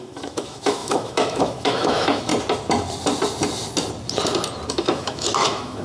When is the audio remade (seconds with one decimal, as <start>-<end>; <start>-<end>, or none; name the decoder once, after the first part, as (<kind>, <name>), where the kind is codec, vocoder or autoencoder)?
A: 0.0-2.3 (autoencoder, DAC-VAE); 4.7-5.8